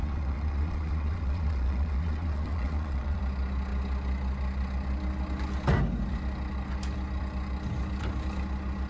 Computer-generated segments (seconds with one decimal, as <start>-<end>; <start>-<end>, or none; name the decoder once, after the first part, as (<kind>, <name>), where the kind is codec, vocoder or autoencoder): 0.0-3.2 (vocoder, Vocos)